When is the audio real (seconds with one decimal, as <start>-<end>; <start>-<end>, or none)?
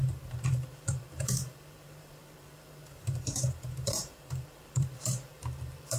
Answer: none